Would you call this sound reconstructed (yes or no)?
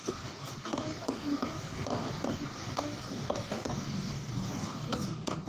yes